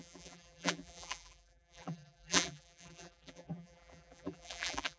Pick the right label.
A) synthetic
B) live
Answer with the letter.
A